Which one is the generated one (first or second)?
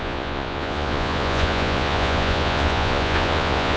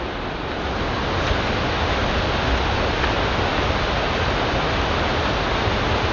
first